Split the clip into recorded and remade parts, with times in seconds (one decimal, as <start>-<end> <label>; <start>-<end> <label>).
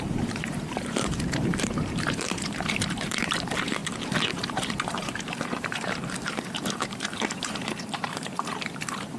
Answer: 0.0-9.2 remade